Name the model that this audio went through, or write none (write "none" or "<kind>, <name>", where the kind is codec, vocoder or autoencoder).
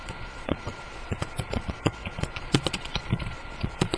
vocoder, Vocos